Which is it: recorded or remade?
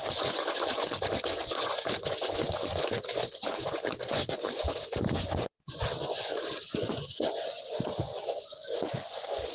remade